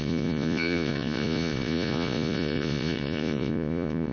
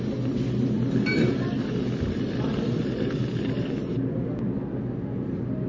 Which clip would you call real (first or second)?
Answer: second